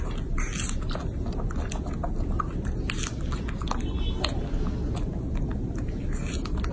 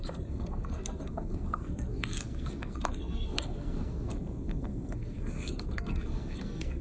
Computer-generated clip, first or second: second